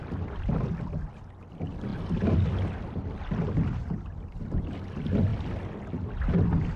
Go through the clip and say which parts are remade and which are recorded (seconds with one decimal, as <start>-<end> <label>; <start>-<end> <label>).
0.0-6.8 recorded